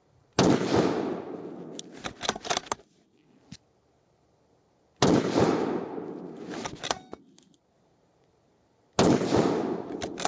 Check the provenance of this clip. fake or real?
real